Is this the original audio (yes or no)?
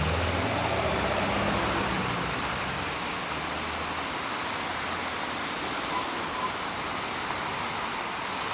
yes